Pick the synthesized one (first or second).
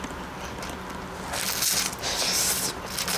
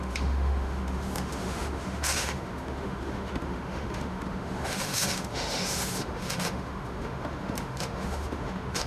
second